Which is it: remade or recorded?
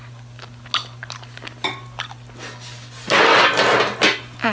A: recorded